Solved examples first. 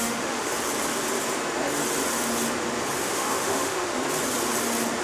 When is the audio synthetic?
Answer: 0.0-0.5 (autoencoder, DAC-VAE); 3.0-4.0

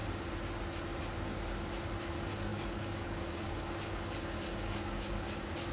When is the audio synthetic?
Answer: 2.0-5.7 (codec, DAC)